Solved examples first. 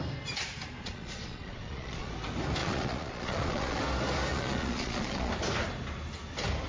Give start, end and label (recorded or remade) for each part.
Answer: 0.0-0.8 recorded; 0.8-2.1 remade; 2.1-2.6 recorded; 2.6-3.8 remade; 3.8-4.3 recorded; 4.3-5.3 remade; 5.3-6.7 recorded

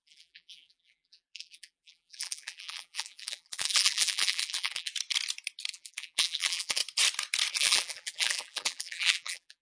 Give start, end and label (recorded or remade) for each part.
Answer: 0.0-4.9 remade; 4.9-5.7 recorded; 5.7-6.8 remade; 6.8-7.5 recorded; 7.5-9.6 remade

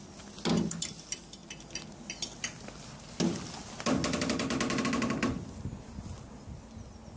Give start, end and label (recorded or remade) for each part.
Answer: 0.0-7.2 recorded

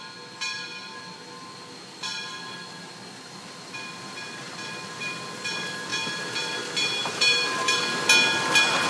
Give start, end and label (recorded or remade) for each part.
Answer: 0.0-5.9 recorded; 5.9-6.6 remade; 6.6-7.0 recorded; 7.0-7.8 remade; 7.8-8.9 recorded

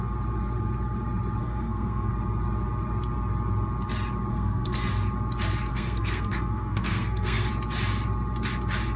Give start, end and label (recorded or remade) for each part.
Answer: 0.0-1.4 recorded; 1.4-2.1 remade; 2.1-4.3 recorded; 4.3-4.9 remade; 4.9-5.7 recorded; 5.7-7.5 remade; 7.5-9.0 recorded

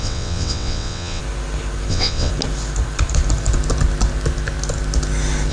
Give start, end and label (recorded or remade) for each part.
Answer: 0.0-1.2 remade; 1.2-1.9 recorded; 1.9-2.3 remade; 2.3-5.5 recorded